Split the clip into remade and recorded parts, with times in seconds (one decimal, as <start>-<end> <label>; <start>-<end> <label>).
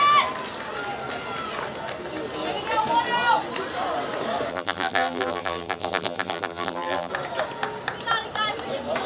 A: 0.0-4.5 recorded; 4.5-7.1 remade; 7.1-9.1 recorded